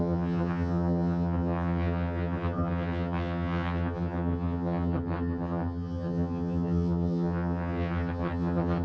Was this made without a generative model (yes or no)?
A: no